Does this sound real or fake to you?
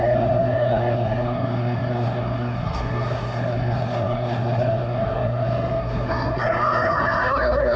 fake